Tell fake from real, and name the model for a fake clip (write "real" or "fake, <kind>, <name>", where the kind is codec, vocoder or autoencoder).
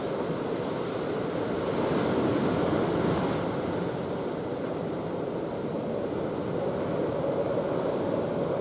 real